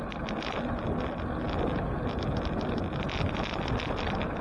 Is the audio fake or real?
real